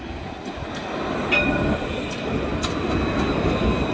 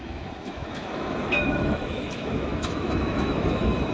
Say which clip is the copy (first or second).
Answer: second